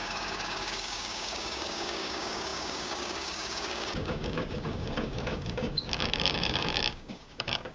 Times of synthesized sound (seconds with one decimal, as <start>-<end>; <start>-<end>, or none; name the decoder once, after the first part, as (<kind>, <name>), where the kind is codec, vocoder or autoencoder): 0.0-7.7 (codec, DAC)